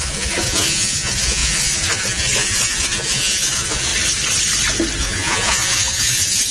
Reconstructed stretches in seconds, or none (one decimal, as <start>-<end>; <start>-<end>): 0.0-3.9; 5.0-6.5